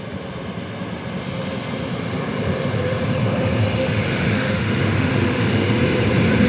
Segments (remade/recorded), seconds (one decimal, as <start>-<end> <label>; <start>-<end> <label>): 0.0-3.8 recorded; 3.8-5.8 remade; 5.8-6.5 recorded